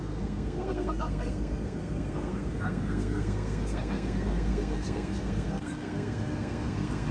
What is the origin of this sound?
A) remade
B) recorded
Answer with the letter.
A